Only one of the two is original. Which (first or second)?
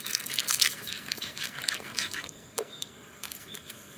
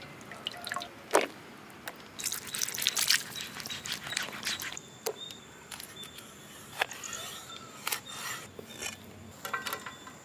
second